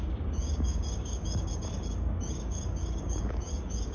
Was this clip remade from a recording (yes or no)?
yes